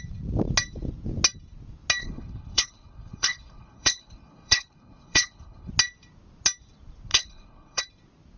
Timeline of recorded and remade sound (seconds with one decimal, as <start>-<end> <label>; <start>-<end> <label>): 0.0-2.0 recorded; 2.0-5.7 remade; 5.7-7.1 recorded; 7.1-7.8 remade; 7.8-8.4 recorded